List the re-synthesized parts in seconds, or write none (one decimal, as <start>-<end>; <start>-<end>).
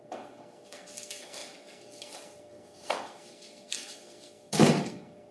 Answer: 0.0-5.3